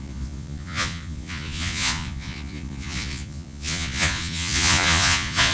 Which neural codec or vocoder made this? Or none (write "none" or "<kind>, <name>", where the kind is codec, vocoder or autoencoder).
vocoder, Vocos